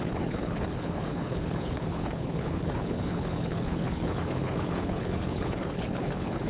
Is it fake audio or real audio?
fake